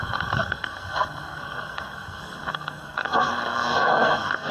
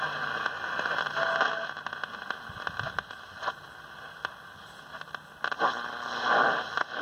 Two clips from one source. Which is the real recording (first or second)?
second